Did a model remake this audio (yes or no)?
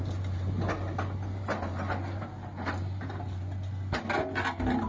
no